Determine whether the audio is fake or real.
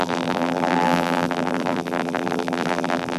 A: fake